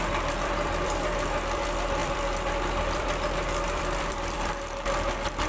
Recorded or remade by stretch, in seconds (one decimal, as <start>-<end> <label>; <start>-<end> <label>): 0.0-5.5 remade